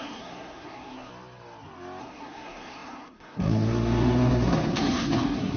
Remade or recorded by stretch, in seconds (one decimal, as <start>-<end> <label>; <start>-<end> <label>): 0.0-1.1 remade; 1.1-2.0 recorded; 2.0-5.6 remade